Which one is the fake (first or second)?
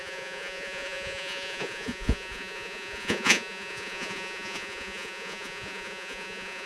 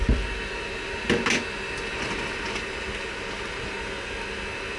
first